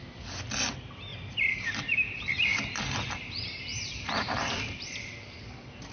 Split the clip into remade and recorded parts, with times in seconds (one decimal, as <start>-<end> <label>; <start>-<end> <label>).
0.0-1.1 recorded; 1.1-3.1 remade; 3.1-3.7 recorded; 3.7-4.6 remade; 4.6-5.9 recorded